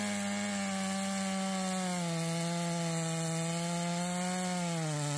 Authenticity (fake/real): real